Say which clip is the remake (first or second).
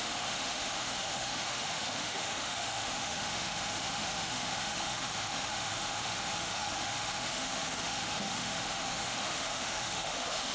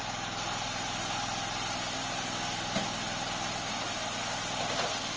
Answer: first